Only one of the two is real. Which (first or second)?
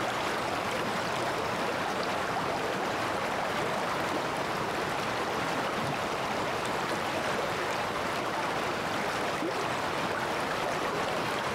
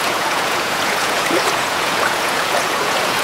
first